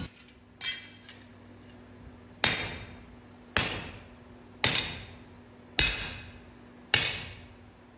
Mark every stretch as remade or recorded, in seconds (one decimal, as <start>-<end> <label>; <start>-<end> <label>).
0.0-8.0 recorded